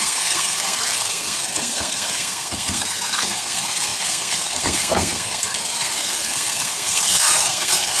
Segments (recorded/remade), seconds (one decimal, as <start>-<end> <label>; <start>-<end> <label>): 0.0-8.0 remade